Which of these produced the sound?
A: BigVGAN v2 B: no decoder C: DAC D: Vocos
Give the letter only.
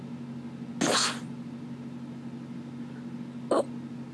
B